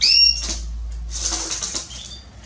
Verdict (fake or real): real